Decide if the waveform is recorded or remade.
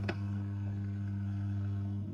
remade